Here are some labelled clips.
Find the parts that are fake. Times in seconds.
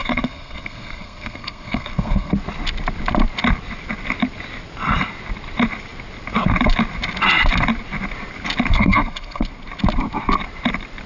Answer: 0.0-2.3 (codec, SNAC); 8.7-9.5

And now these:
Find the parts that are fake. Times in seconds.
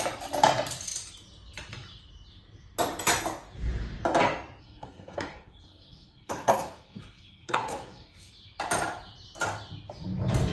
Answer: 4.6-8.3 (codec, SNAC)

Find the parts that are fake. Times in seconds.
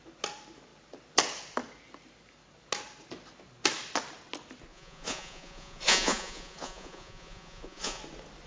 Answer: 4.7-8.0 (vocoder, Vocos)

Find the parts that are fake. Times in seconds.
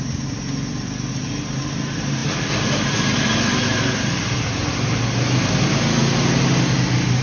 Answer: none